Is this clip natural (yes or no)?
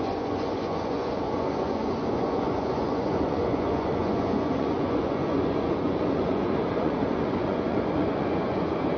no